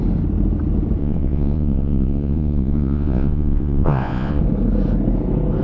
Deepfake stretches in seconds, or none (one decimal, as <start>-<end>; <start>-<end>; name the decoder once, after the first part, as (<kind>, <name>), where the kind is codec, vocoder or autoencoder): 1.0-4.4 (vocoder, Vocos)

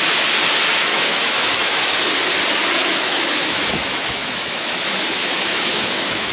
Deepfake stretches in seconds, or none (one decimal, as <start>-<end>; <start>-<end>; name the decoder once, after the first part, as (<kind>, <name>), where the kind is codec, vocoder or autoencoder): 0.9-1.8 (autoencoder, DAC-VAE); 2.8-6.3

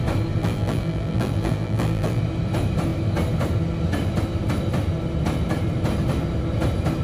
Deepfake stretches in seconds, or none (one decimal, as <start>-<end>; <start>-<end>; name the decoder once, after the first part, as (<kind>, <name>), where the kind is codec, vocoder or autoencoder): 0.4-2.2 (vocoder, BigVGAN v2)

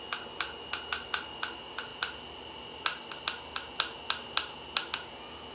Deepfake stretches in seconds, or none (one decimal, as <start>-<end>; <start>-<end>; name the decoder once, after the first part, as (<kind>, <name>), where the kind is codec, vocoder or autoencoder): none

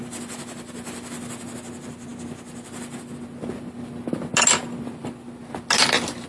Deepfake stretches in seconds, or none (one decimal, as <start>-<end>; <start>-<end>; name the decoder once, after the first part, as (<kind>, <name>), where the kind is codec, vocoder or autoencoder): none